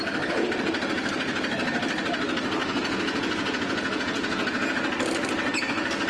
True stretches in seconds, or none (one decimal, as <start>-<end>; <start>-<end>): 0.0-2.6; 4.7-6.1